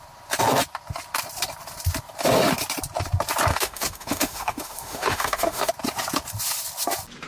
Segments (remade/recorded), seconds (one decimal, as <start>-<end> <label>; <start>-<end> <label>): 0.0-3.5 recorded; 3.5-5.7 remade; 5.7-7.3 recorded